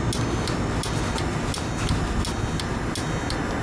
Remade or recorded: recorded